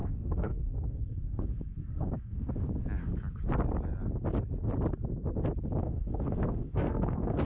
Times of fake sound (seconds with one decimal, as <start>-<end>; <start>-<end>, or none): 0.0-2.5; 5.8-7.4